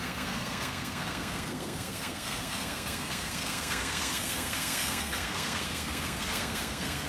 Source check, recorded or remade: remade